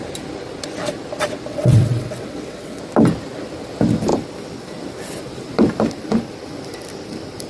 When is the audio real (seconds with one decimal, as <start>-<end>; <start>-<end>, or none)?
0.0-1.5; 2.8-7.5